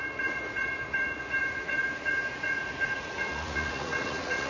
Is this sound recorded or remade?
remade